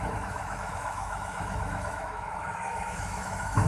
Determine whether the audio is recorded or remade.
remade